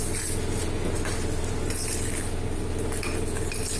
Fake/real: real